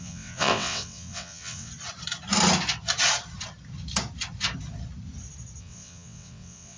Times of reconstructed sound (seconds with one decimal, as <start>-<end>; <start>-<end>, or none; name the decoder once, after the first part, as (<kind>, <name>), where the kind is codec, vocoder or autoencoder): 0.0-1.7 (vocoder, WaveNeXt); 5.6-6.8